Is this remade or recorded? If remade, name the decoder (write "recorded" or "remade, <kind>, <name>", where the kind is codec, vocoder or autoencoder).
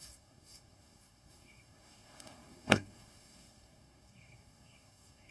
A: remade, codec, SNAC